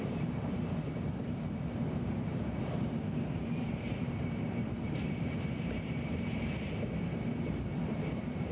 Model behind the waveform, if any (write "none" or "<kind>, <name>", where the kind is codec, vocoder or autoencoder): vocoder, BigVGAN v2